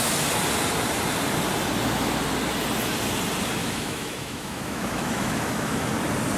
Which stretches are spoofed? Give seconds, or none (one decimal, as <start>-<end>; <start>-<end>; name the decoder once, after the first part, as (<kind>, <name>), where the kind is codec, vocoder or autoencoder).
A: 3.6-5.9 (autoencoder, DAC-VAE)